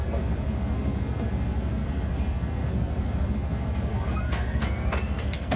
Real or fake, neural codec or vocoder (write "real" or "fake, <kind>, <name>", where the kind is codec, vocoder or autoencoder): fake, codec, SNAC